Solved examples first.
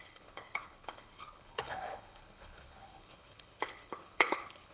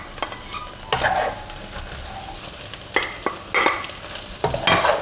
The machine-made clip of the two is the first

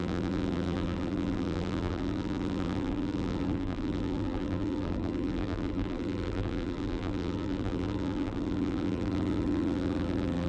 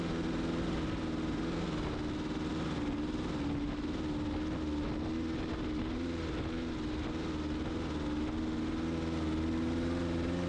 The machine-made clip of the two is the first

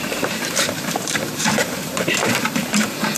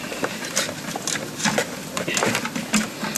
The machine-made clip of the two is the first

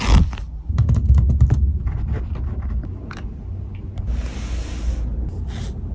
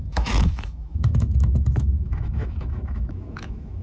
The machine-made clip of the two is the second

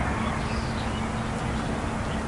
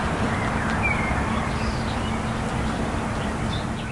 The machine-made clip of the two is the second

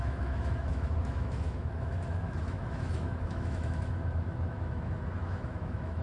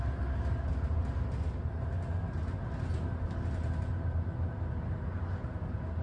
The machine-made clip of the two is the first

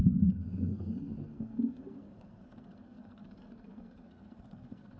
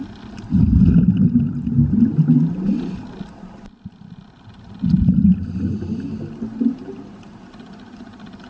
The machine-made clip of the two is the first